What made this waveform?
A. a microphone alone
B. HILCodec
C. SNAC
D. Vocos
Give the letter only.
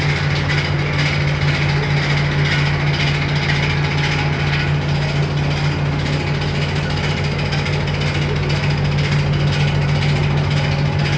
A